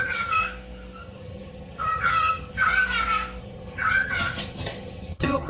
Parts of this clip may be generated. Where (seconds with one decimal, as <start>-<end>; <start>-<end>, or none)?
0.0-0.4; 1.0-2.7; 3.4-5.5

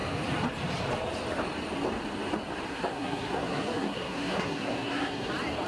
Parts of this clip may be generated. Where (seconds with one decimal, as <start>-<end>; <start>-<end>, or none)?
2.7-5.3

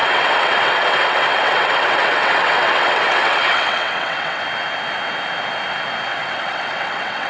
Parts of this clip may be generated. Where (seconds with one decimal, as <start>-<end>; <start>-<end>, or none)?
0.0-4.4; 6.1-7.3

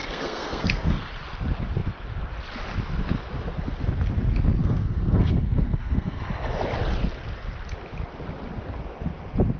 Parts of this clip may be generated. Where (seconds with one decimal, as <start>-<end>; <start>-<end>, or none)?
0.0-1.1; 4.6-6.2

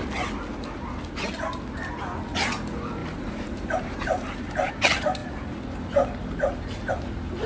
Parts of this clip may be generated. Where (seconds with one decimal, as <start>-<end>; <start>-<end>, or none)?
3.0-4.7

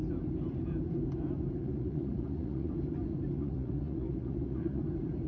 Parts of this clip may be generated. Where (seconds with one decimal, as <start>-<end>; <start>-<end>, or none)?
1.6-2.7; 3.4-4.8

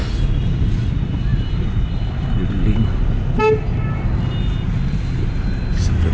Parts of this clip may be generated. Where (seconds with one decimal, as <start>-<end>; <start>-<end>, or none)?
none

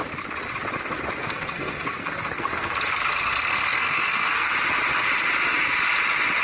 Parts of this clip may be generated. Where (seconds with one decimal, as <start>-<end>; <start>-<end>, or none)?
1.2-4.5